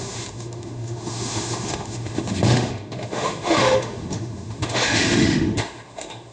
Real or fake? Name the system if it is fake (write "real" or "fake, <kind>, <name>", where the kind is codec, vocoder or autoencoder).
fake, autoencoder, DAC-VAE